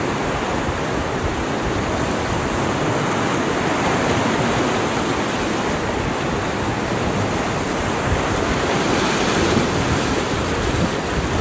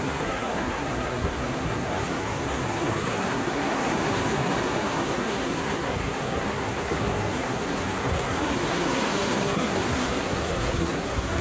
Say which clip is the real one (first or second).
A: first